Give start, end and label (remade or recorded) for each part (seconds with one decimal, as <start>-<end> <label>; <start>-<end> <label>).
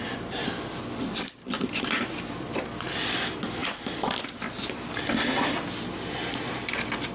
0.0-3.6 recorded; 3.6-5.0 remade; 5.0-7.1 recorded